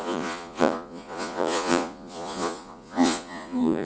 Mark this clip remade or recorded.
remade